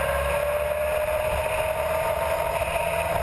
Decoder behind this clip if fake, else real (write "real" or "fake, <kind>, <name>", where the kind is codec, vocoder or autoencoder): real